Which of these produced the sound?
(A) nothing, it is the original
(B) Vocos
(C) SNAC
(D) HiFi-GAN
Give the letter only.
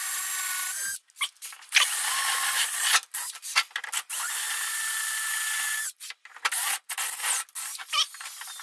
A